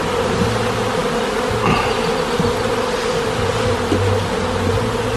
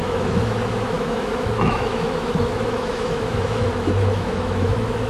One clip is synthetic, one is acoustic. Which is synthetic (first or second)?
second